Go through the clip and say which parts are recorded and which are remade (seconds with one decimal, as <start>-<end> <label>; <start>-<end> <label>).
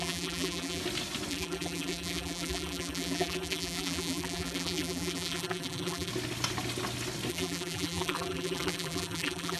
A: 0.0-0.8 remade; 0.8-1.3 recorded; 1.3-6.1 remade; 6.1-7.3 recorded; 7.3-9.6 remade